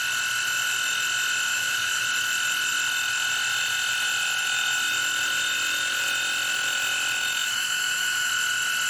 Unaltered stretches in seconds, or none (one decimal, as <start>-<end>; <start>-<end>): 0.0-1.5; 2.0-7.4; 8.3-8.9

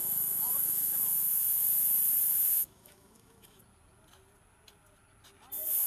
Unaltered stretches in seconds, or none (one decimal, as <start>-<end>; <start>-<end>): 1.6-2.5; 3.6-5.9